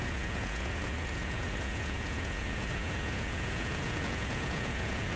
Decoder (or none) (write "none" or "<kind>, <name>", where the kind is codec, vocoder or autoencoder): vocoder, Vocos